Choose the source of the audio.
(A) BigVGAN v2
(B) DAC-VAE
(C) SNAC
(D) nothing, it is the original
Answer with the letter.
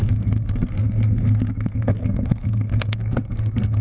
C